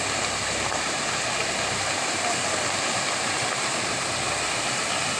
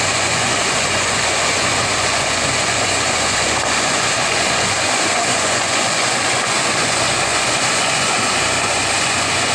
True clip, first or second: first